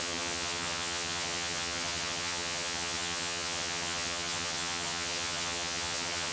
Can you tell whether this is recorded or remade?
remade